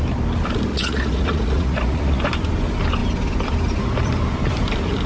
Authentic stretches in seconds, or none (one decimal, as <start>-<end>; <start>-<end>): 0.0-0.7; 2.2-5.1